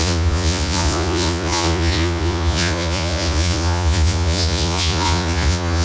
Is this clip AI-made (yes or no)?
yes